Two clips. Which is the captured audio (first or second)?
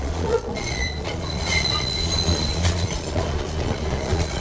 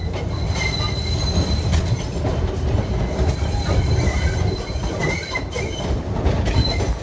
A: second